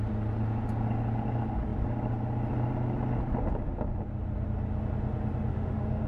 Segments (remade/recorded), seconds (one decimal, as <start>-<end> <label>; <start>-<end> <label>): 0.0-5.5 recorded; 5.5-6.1 remade